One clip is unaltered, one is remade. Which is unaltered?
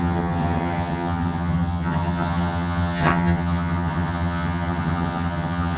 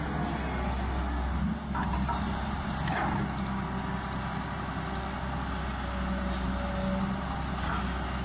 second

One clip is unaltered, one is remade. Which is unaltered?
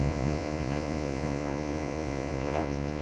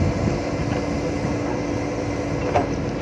second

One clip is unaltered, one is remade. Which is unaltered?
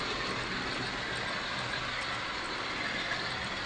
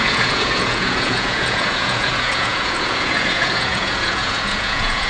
first